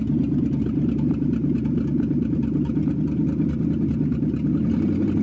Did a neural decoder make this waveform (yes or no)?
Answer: no